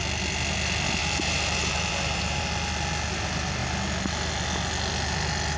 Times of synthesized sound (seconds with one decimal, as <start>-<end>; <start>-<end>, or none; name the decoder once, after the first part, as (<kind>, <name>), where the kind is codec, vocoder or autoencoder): 1.0-2.4 (vocoder, BigVGAN v2)